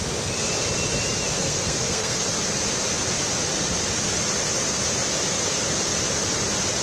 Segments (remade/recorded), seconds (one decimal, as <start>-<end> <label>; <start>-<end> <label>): 0.0-1.3 recorded; 1.3-2.2 remade; 2.2-6.8 recorded